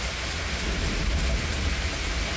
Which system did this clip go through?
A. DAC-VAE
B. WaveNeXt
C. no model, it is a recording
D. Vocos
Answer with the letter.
C